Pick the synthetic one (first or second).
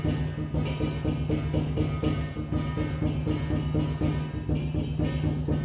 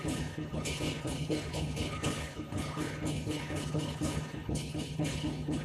second